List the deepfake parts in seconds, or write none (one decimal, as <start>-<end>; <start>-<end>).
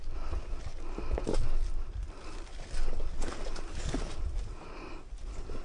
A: none